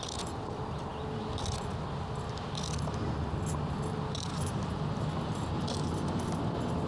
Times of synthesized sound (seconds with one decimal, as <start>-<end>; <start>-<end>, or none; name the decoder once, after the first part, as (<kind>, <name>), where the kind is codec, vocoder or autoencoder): none